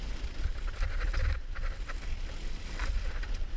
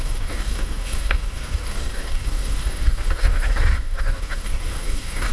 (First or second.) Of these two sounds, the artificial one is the second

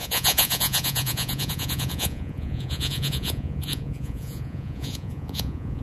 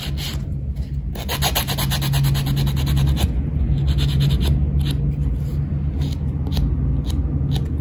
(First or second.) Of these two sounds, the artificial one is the first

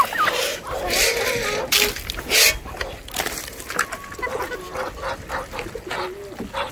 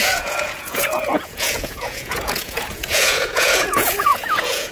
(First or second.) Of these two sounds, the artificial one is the second